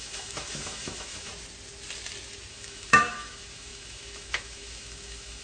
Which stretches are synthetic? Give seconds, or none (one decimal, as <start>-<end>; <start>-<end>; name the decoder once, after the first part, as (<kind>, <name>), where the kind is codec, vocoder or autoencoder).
0.0-1.3 (autoencoder, DAC-VAE); 2.5-5.4